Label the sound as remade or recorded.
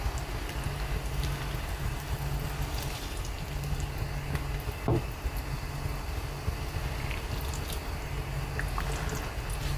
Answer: recorded